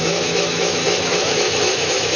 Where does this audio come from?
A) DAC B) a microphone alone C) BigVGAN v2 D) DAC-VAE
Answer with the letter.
D